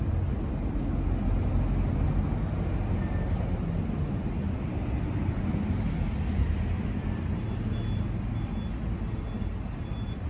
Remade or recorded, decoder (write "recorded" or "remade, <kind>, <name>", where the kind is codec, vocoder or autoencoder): recorded